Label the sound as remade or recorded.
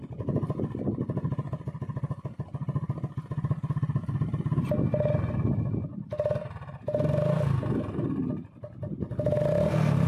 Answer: recorded